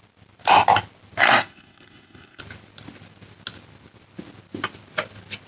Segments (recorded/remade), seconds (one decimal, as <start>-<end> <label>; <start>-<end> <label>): 0.0-1.2 recorded; 1.2-2.4 remade; 2.4-5.5 recorded